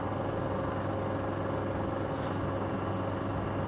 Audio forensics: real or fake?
real